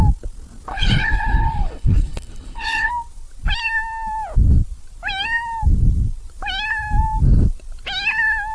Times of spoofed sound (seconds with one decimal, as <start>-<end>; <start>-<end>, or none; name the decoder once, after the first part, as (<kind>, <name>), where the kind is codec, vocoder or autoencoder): 0.7-2.9 (codec, HILCodec)